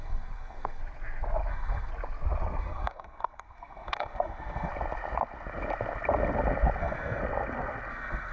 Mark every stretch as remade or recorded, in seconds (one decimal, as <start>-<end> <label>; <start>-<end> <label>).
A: 0.0-0.8 remade; 0.8-1.5 recorded; 1.5-1.9 remade; 1.9-2.6 recorded; 2.6-4.7 remade; 4.7-6.8 recorded; 6.8-7.2 remade; 7.2-7.9 recorded; 7.9-8.3 remade